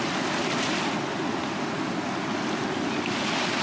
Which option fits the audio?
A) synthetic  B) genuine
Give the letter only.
B